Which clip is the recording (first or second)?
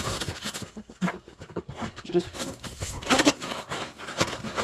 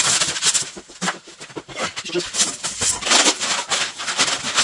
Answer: second